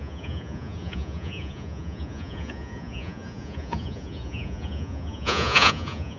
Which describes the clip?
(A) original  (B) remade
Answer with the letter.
B